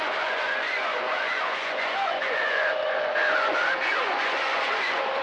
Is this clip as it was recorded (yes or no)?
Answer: no